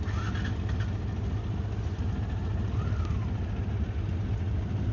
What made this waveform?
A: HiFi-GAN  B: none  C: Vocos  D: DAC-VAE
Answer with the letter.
B